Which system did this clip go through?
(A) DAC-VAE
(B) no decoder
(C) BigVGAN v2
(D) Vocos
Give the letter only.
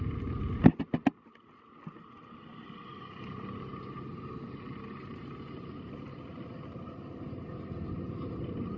B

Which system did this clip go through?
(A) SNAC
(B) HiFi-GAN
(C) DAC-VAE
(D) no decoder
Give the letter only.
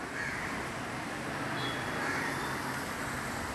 D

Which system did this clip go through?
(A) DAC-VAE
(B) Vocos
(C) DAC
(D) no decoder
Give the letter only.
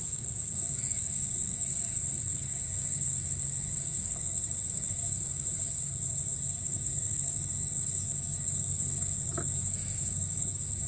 C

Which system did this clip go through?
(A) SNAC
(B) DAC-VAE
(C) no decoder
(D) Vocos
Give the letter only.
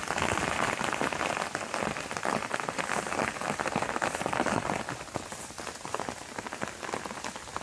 C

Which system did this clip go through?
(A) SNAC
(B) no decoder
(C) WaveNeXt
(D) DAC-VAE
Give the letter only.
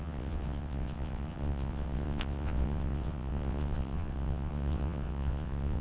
C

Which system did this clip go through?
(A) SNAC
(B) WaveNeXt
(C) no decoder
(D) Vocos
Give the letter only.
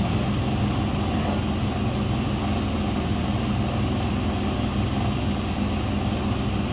C